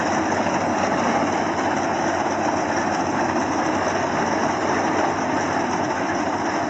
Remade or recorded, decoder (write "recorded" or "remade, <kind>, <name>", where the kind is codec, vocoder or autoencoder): recorded